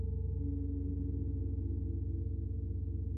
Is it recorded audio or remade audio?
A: recorded